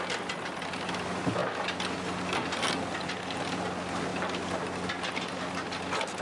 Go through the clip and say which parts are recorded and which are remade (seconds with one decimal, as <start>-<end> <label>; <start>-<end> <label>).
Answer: 0.0-6.2 recorded